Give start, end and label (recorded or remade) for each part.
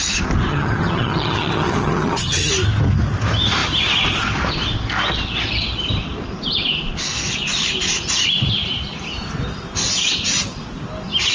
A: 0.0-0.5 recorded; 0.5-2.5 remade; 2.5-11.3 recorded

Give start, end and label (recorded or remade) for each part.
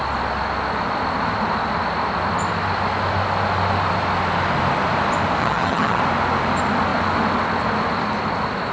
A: 0.0-5.4 recorded; 5.4-6.0 remade; 6.0-8.7 recorded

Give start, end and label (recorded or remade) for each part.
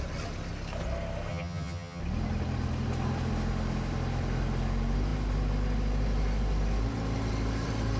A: 0.0-1.3 recorded; 1.3-2.0 remade; 2.0-8.0 recorded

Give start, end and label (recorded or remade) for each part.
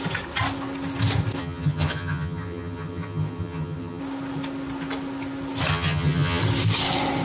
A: 0.0-1.4 recorded; 1.4-4.0 remade; 4.0-5.7 recorded; 5.7-6.4 remade; 6.4-7.2 recorded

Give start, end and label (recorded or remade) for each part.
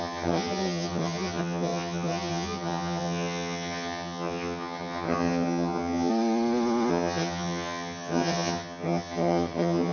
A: 0.0-6.1 remade; 6.1-6.9 recorded; 6.9-9.9 remade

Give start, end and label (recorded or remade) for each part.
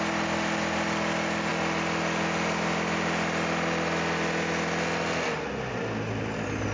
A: 0.0-6.7 recorded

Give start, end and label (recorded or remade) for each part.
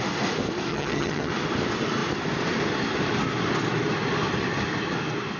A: 0.0-0.7 recorded; 0.7-1.3 remade; 1.3-5.4 recorded